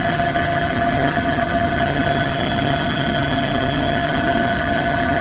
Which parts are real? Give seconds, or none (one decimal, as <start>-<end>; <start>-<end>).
none